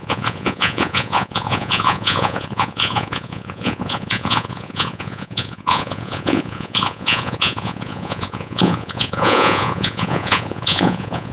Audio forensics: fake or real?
fake